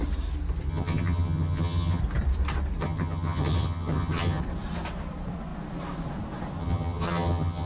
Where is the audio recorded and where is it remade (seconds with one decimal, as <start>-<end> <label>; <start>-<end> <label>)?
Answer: 0.0-0.7 recorded; 0.7-2.0 remade; 2.0-2.8 recorded; 2.8-4.4 remade; 4.4-6.6 recorded; 6.6-7.7 remade